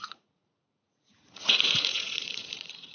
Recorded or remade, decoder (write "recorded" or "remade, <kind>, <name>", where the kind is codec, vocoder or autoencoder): remade, vocoder, Vocos